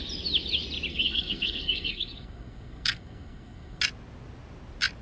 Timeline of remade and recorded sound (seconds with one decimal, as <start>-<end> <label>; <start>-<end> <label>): 0.0-0.9 recorded; 0.9-3.8 remade; 3.8-5.0 recorded